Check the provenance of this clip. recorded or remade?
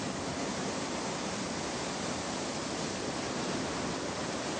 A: recorded